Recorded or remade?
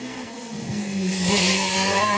remade